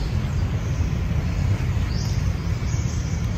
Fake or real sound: real